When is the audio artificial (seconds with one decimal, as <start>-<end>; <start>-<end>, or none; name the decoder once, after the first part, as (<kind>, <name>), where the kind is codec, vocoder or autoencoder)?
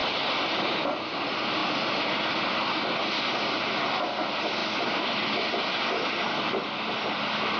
none